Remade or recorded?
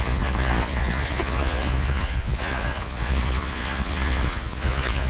remade